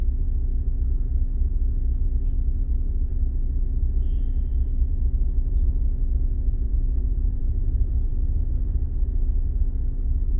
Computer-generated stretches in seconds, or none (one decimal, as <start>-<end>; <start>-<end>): 6.7-7.4